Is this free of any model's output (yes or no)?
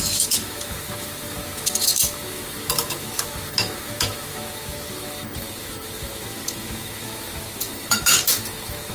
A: no